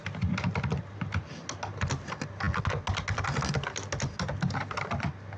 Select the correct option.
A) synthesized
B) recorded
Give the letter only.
B